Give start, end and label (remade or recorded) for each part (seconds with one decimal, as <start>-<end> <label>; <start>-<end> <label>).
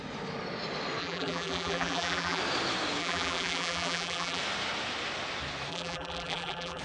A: 0.0-1.0 recorded; 1.0-2.4 remade; 2.4-3.0 recorded; 3.0-4.4 remade; 4.4-5.7 recorded; 5.7-6.8 remade